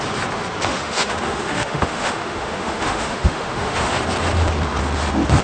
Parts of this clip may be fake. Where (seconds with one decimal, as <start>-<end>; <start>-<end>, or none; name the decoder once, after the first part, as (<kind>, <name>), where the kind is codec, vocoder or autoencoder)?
0.7-3.9 (autoencoder, DAC-VAE)